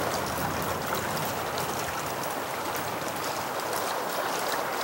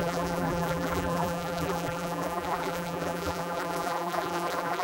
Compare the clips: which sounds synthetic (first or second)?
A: second